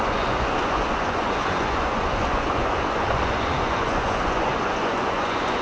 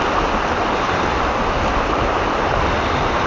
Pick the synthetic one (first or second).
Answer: first